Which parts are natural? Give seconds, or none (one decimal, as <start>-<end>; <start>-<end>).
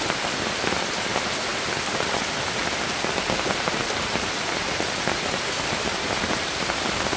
0.0-7.2